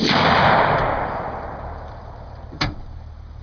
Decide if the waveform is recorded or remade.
recorded